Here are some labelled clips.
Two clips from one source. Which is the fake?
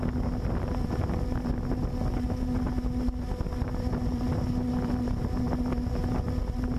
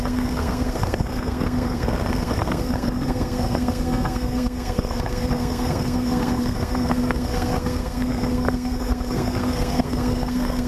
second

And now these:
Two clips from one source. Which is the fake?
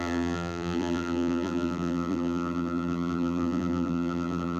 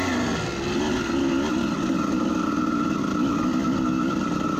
first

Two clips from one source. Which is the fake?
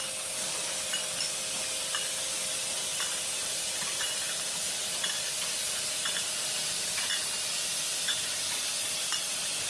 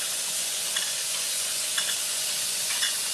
second